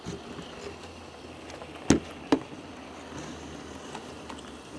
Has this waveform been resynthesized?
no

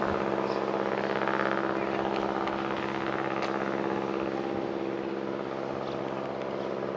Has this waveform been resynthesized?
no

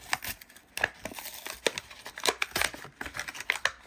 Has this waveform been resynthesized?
no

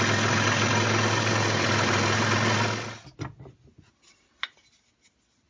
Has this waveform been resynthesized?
no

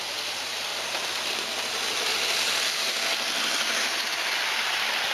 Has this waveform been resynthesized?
no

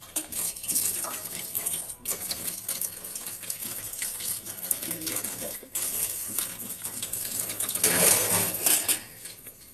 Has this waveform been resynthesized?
yes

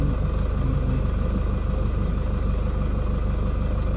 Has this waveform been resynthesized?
no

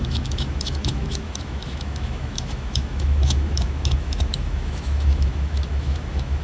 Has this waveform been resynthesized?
yes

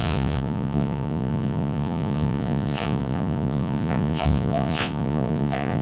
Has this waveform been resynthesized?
yes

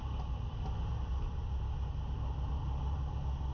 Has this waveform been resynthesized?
no